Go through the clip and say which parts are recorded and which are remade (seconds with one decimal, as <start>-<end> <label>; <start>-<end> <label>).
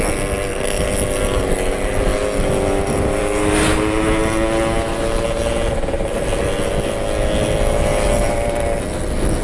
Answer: 0.0-9.4 recorded